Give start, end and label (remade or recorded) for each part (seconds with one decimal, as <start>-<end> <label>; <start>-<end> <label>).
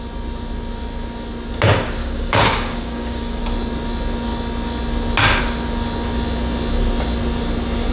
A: 0.0-2.0 recorded; 2.0-3.4 remade; 3.4-7.9 recorded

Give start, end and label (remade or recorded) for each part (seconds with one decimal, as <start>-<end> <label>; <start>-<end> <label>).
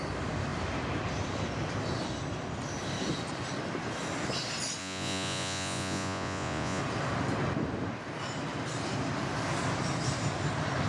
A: 0.0-4.8 recorded; 4.8-6.8 remade; 6.8-10.9 recorded